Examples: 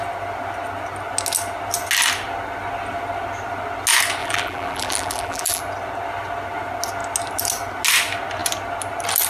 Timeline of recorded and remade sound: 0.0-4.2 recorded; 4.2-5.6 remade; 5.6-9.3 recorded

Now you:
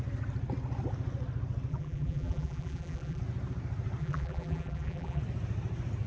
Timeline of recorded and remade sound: 0.0-1.7 recorded; 1.7-3.2 remade; 3.2-4.0 recorded; 4.0-5.2 remade; 5.2-6.1 recorded

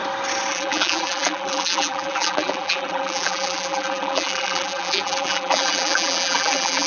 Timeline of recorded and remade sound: 0.0-0.5 recorded; 0.5-6.9 remade